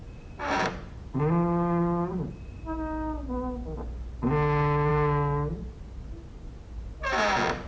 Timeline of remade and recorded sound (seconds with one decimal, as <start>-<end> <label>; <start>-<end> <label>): 0.0-1.1 remade; 1.1-7.7 recorded